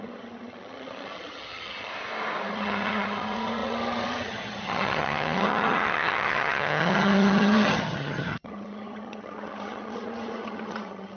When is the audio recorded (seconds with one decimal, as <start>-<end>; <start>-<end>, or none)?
1.9-2.5